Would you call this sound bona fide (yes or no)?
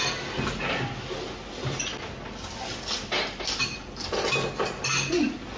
yes